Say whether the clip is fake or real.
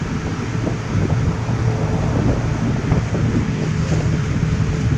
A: real